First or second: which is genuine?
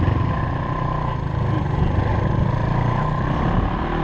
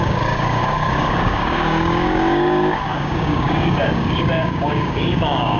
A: first